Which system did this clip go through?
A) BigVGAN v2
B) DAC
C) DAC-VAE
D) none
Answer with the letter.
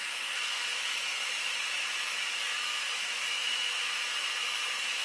C